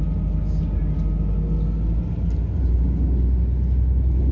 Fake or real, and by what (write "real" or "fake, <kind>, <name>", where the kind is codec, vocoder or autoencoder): real